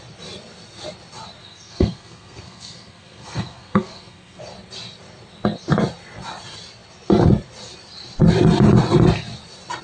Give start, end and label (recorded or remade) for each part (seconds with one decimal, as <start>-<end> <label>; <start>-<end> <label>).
0.0-1.4 recorded; 1.4-4.4 remade; 4.4-9.8 recorded